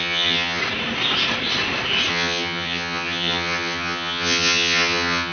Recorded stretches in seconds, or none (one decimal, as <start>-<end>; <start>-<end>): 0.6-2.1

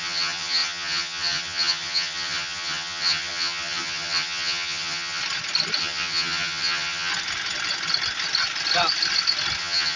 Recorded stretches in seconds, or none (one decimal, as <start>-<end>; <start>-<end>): 5.2-5.8; 7.1-9.6

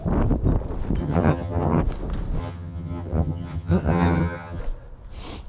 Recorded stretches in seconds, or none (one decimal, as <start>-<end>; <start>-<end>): 0.0-1.0; 1.8-2.4; 4.6-5.5

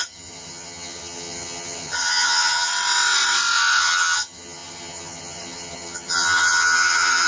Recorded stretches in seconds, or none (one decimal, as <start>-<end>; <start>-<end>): 2.7-3.8